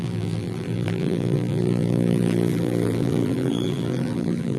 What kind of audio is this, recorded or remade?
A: remade